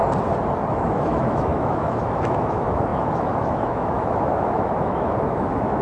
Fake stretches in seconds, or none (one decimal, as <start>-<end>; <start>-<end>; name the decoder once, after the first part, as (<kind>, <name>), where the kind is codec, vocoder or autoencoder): 0.7-5.8 (autoencoder, DAC-VAE)

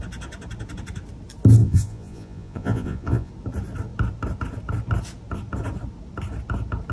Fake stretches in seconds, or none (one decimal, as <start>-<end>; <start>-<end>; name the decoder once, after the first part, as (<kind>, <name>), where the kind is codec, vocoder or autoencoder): 1.6-3.3 (vocoder, Vocos)